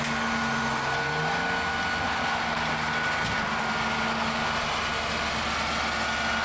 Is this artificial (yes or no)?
no